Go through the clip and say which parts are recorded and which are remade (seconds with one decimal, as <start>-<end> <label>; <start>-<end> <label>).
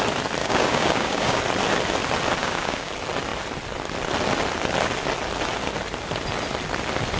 0.0-0.4 recorded; 0.4-1.4 remade; 1.4-2.4 recorded; 2.4-2.9 remade; 2.9-7.2 recorded